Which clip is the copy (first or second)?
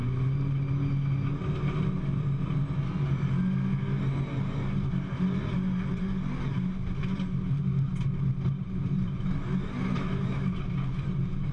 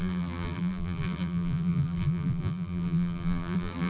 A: second